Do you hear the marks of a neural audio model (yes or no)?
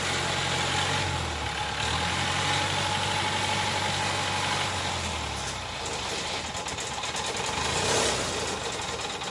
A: no